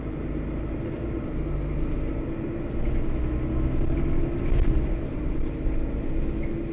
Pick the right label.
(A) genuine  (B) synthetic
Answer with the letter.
A